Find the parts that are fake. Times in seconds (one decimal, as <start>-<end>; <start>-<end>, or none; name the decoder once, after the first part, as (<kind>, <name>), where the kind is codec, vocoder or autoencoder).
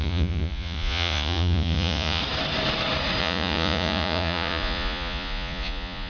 0.0-2.2 (vocoder, Vocos); 3.2-6.1